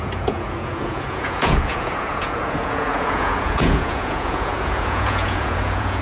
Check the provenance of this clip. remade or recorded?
remade